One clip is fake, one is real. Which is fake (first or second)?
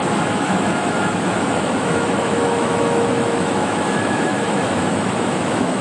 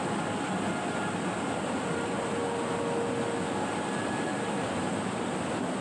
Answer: first